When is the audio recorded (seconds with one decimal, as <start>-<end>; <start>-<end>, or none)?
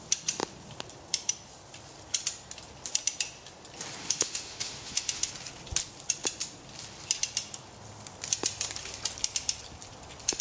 0.0-4.0; 5.3-10.4